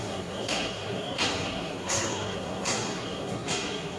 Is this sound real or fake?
fake